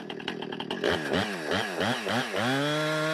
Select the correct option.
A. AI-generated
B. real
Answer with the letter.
B